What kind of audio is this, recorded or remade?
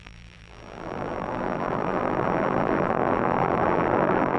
remade